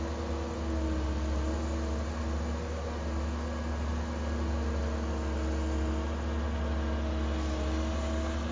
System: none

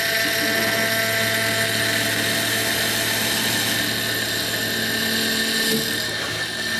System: none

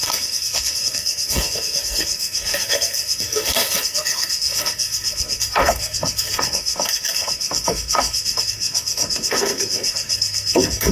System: codec, SNAC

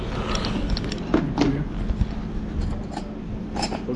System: none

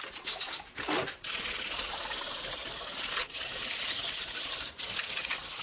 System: none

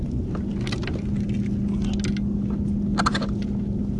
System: none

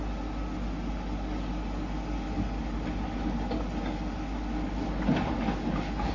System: none